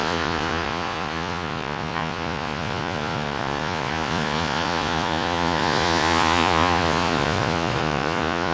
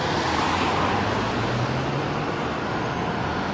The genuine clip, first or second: second